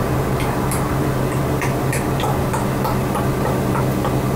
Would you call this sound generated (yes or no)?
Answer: no